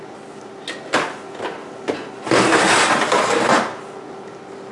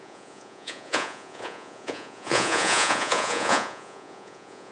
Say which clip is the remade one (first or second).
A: second